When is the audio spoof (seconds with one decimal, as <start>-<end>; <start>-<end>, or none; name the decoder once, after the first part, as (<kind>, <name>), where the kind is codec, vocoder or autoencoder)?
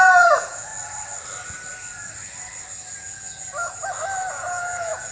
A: 0.0-0.7 (vocoder, Vocos); 2.9-3.8; 4.3-5.1